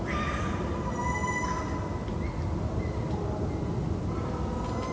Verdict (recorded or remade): recorded